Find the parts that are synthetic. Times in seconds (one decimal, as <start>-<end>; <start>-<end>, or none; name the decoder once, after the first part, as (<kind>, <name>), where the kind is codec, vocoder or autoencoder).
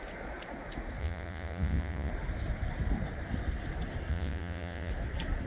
1.0-2.1 (vocoder, Vocos); 4.1-4.9